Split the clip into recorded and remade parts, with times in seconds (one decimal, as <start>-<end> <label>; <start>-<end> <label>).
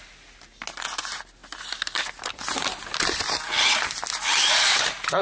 0.0-5.2 recorded